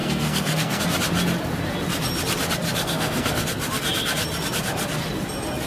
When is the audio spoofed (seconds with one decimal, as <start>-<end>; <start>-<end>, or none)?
0.0-0.8; 2.7-3.4